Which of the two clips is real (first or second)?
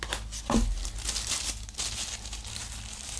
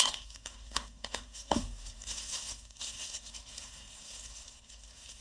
first